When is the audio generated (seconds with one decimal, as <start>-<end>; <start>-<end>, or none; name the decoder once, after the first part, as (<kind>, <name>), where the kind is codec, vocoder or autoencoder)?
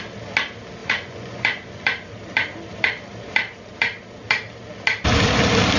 0.8-1.8 (vocoder, Vocos)